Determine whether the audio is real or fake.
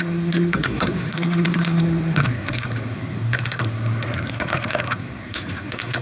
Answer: fake